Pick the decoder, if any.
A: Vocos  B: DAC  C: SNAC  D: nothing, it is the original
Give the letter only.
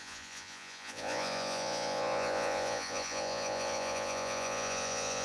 A